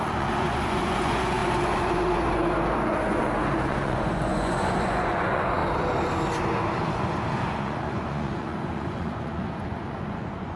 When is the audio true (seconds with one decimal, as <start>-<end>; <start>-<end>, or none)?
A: 5.6-6.9